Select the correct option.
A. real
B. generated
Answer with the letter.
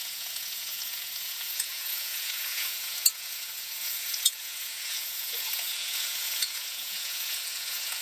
B